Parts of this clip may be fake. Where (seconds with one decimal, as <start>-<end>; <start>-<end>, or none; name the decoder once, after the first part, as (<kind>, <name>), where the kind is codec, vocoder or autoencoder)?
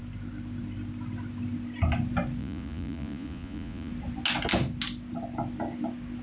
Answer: 2.4-3.9 (vocoder, Vocos)